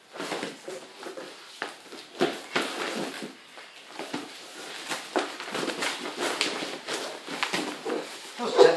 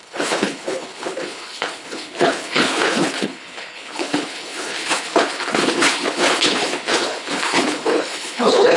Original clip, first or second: first